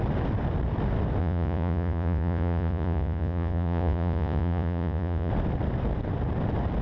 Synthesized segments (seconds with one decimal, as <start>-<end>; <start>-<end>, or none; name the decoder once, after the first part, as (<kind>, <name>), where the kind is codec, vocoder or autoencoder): 1.2-5.3 (vocoder, Vocos)

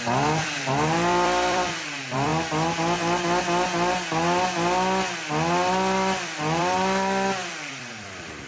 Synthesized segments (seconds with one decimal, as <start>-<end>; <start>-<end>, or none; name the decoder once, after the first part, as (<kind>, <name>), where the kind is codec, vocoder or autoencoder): 0.0-2.3 (vocoder, BigVGAN v2); 5.7-8.5

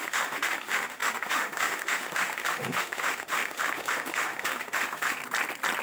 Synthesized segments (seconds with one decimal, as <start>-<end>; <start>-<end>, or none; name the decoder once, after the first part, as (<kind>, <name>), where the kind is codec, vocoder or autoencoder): 0.0-5.2 (autoencoder, DAC-VAE)

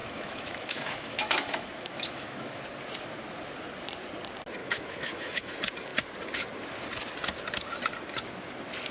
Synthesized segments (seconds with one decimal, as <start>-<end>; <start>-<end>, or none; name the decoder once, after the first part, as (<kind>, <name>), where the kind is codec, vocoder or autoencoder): 0.0-2.6 (autoencoder, DAC-VAE); 4.6-5.5

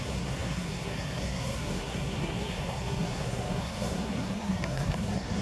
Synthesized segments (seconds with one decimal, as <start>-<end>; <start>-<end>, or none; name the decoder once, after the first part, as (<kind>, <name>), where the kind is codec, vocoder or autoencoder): 0.0-5.4 (codec, SNAC)